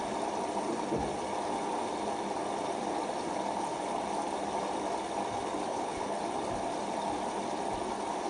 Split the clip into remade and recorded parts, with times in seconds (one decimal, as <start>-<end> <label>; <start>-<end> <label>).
0.0-5.7 recorded; 5.7-6.2 remade; 6.2-8.3 recorded